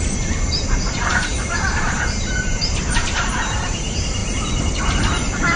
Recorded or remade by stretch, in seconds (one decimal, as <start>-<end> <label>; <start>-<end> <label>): 0.0-4.2 remade; 4.2-5.6 recorded